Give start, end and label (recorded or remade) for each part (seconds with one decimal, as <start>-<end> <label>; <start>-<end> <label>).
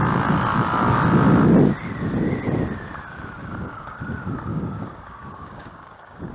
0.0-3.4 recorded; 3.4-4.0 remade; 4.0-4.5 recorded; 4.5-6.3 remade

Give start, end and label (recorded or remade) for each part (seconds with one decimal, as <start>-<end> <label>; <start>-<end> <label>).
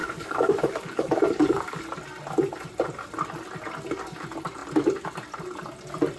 0.0-1.8 remade; 1.8-6.2 recorded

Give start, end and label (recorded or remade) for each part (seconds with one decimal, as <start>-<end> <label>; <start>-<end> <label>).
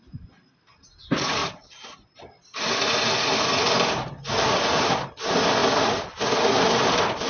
0.0-7.3 recorded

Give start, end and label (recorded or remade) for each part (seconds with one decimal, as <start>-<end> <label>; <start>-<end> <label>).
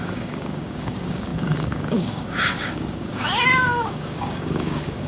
0.0-5.1 remade